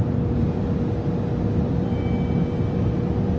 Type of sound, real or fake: real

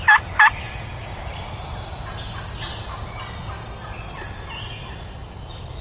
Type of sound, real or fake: real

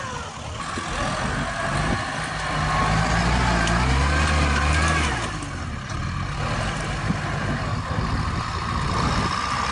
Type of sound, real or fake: real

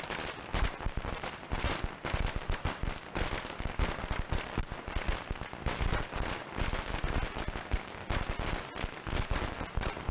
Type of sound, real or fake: real